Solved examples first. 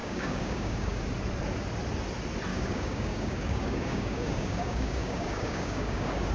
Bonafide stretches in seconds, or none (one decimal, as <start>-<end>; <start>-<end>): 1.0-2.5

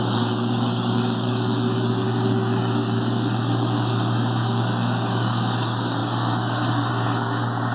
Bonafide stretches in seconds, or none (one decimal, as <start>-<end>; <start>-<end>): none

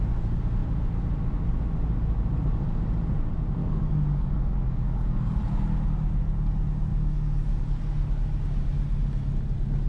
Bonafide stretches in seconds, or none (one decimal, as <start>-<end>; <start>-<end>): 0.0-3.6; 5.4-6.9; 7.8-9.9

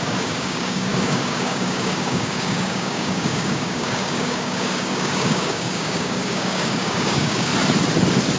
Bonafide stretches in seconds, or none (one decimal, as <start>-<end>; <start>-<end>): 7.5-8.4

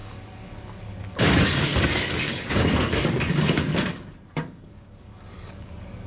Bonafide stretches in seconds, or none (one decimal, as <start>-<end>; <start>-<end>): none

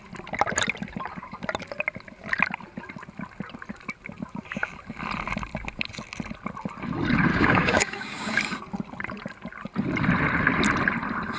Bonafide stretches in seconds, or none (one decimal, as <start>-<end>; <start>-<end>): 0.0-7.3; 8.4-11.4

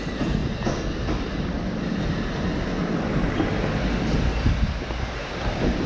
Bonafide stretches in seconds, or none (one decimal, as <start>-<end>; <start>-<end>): 0.0-5.9

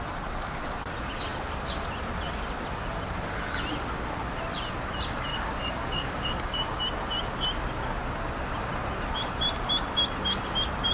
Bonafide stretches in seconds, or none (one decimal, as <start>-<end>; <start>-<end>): 0.0-5.3; 6.8-10.9